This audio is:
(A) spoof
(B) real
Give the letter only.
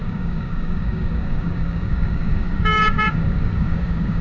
A